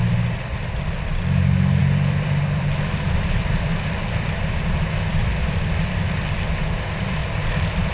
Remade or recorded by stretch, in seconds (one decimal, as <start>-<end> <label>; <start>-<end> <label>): 0.0-1.8 recorded; 1.8-4.5 remade; 4.5-7.2 recorded; 7.2-7.9 remade